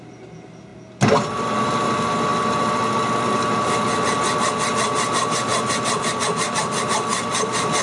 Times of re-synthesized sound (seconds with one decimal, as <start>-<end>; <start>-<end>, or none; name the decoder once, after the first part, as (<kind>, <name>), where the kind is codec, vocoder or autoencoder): none